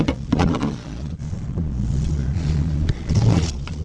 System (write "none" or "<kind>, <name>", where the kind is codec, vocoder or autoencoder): vocoder, Vocos